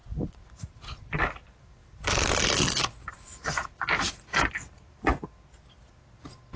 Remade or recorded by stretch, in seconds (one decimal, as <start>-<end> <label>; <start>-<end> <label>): 0.0-6.6 recorded